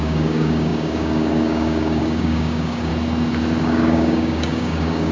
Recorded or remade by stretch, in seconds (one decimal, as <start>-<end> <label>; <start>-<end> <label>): 0.0-2.9 remade; 2.9-3.6 recorded; 3.6-5.1 remade